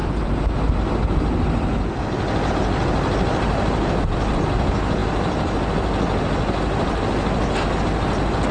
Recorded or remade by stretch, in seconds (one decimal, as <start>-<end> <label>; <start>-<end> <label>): 0.0-8.5 recorded